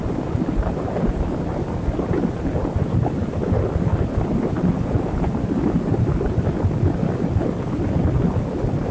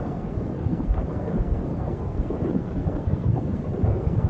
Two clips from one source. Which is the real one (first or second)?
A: first